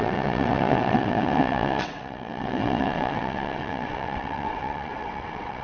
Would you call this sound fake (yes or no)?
yes